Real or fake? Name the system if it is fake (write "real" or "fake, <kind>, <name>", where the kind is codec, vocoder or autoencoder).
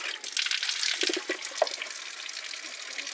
real